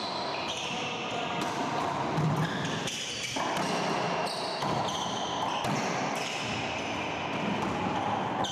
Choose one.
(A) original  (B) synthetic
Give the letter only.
A